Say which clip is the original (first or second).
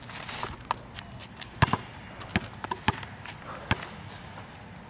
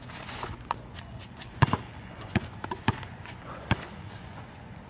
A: first